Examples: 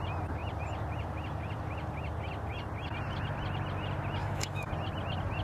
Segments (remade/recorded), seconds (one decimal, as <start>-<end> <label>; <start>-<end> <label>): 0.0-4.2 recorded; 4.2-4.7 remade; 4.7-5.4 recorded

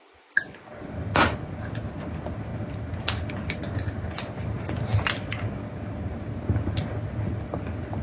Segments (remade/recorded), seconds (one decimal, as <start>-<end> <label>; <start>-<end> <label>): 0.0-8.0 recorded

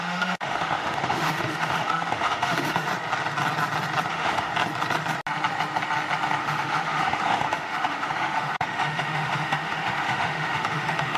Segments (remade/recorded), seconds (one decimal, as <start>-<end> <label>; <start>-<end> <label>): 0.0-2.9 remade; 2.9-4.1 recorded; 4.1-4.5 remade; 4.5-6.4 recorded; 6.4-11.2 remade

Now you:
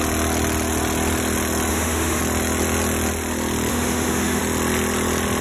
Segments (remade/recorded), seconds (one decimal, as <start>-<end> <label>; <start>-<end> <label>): 0.0-1.7 recorded; 1.7-2.2 remade; 2.2-3.7 recorded; 3.7-4.4 remade; 4.4-5.4 recorded